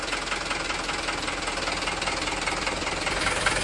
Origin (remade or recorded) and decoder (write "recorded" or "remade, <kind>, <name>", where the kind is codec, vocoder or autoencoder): recorded